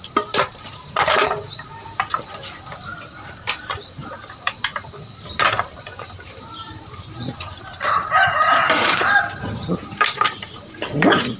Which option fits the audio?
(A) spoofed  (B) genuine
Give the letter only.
A